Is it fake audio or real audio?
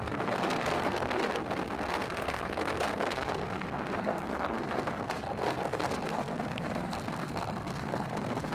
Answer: fake